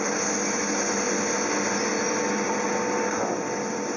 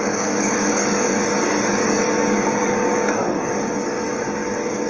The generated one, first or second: second